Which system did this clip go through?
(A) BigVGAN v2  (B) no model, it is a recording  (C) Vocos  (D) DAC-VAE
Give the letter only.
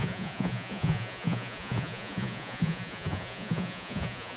C